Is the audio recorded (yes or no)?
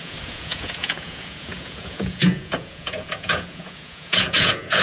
no